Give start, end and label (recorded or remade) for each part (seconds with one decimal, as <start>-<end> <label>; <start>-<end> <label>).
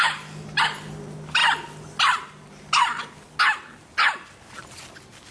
0.0-5.3 recorded